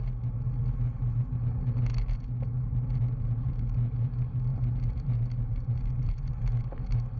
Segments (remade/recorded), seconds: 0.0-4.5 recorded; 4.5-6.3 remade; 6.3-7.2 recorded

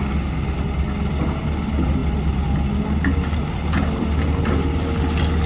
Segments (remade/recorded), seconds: 0.0-5.5 recorded

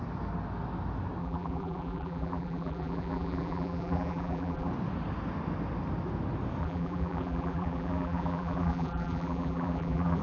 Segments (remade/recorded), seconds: 0.0-1.2 recorded; 1.2-4.7 remade; 4.7-6.6 recorded; 6.6-10.2 remade

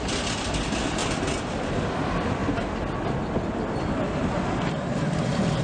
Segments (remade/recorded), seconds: 0.0-1.0 remade; 1.0-1.5 recorded; 1.5-2.4 remade; 2.4-4.8 recorded; 4.8-5.6 remade

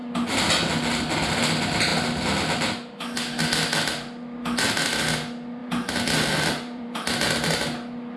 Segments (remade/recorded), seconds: 0.0-5.6 recorded; 5.6-7.1 remade; 7.1-8.2 recorded

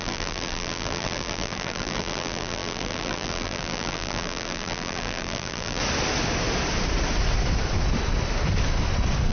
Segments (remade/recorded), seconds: 0.0-5.8 remade; 5.8-9.3 recorded

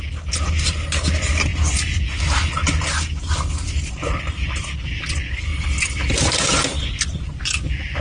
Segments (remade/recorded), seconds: 0.0-8.0 recorded